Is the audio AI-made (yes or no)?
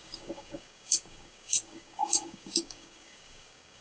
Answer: yes